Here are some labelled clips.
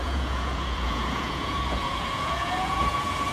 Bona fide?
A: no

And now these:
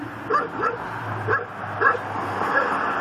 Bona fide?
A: yes